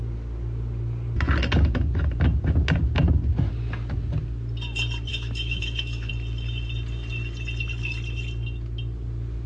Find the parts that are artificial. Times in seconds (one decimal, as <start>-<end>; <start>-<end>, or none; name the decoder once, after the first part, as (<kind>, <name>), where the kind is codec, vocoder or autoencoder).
5.1-6.1 (autoencoder, DAC-VAE)